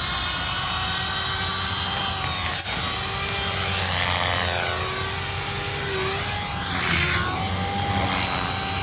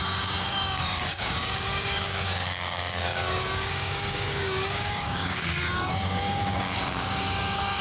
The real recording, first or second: first